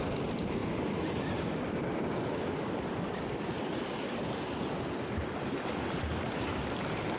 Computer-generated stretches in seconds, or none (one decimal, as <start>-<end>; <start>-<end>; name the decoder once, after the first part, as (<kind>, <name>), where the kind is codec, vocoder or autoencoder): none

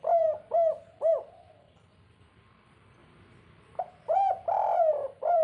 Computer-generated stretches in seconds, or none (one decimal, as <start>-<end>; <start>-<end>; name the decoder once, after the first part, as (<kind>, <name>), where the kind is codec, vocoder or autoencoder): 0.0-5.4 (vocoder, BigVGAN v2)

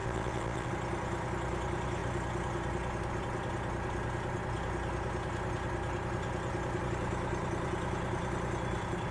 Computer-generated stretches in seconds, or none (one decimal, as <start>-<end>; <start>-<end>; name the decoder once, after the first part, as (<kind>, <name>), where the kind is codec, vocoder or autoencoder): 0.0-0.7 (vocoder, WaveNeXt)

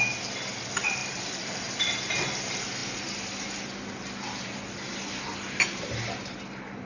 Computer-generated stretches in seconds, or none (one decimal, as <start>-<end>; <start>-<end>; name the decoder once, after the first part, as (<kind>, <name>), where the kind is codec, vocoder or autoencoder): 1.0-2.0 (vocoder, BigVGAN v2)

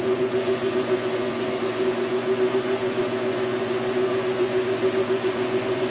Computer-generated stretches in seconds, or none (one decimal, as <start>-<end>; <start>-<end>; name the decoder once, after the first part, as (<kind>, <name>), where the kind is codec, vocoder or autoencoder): 0.0-5.9 (vocoder, Vocos)

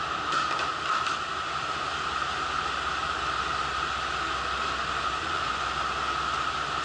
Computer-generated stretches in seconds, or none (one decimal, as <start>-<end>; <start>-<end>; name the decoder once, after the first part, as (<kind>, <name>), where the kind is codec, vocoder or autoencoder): 5.2-5.7 (vocoder, Vocos)

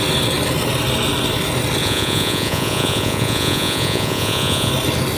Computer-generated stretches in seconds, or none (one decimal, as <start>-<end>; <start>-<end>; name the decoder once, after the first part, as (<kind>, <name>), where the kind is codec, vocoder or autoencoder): 1.8-4.7 (vocoder, Vocos)